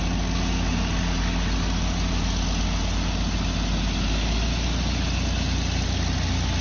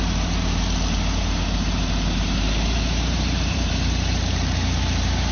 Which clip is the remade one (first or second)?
second